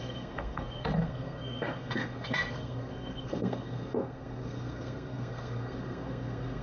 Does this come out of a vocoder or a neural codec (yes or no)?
yes